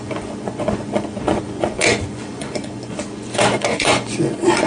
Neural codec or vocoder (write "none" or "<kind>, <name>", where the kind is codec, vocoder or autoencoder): vocoder, Vocos